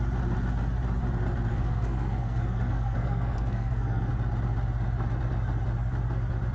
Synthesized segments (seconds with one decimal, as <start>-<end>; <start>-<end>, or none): 1.5-4.1